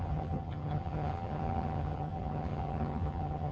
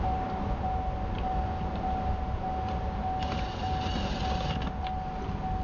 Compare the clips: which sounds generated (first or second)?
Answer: first